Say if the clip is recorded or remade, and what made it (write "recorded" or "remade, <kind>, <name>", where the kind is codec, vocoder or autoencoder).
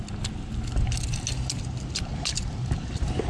recorded